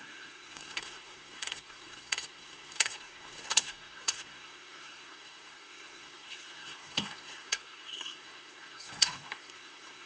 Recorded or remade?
remade